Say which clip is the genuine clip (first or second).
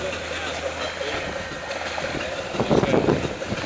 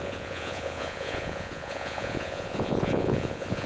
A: first